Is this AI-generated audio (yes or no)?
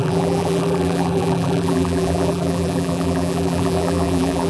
yes